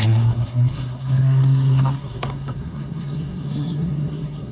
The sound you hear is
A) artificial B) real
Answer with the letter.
A